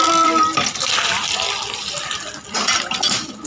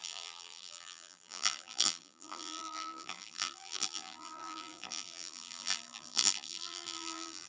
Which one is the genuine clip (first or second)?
first